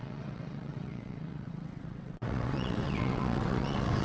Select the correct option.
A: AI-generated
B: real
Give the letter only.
A